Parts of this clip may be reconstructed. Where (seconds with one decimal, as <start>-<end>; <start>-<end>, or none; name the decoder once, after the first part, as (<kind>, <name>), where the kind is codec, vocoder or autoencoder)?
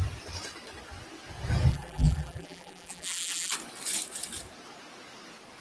1.7-3.5 (vocoder, BigVGAN v2)